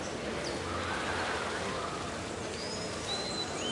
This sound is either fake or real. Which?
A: real